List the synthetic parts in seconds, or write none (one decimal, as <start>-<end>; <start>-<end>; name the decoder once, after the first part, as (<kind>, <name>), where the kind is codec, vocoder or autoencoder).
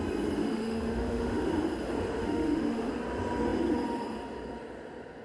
0.4-1.5 (autoencoder, DAC-VAE); 2.2-2.9